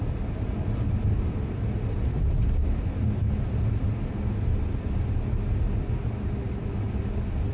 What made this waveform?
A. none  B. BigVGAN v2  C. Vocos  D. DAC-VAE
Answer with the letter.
A